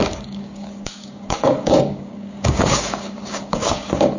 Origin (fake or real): fake